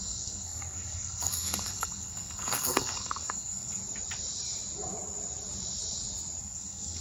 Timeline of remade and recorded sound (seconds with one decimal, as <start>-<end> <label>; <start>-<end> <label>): 0.0-3.8 remade; 3.8-6.4 recorded; 6.4-7.0 remade